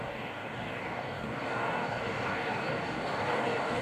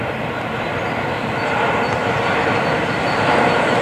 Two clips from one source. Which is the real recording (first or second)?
second